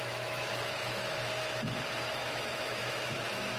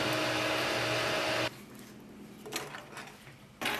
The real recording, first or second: second